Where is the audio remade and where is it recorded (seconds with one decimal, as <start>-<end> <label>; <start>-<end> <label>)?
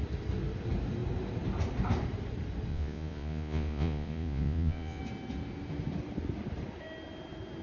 0.0-2.7 recorded; 2.7-5.0 remade; 5.0-7.6 recorded